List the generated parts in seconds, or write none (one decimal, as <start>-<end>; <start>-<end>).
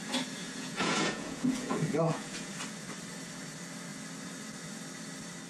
0.4-2.5